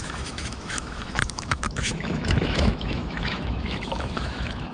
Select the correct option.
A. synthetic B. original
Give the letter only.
A